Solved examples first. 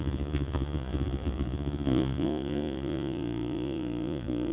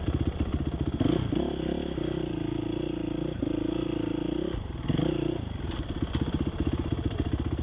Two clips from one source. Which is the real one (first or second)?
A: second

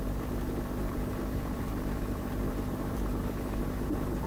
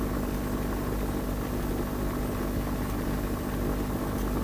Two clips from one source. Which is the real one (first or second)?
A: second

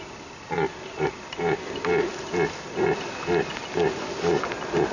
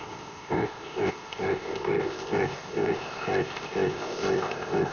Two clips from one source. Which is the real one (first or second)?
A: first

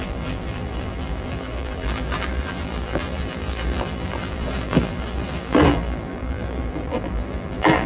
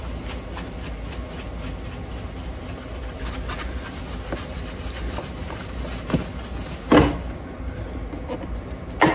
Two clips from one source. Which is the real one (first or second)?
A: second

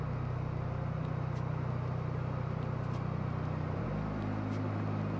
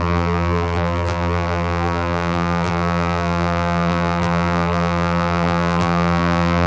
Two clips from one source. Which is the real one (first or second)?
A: first